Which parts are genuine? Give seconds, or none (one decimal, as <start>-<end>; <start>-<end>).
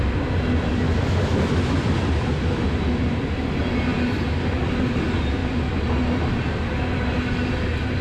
0.0-8.0